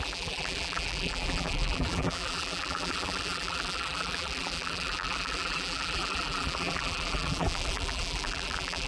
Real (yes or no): no